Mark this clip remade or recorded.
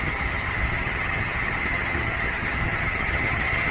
remade